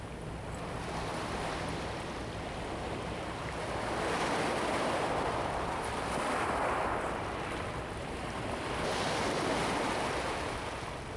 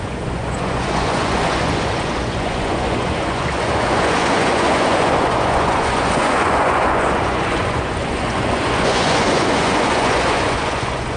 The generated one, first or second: second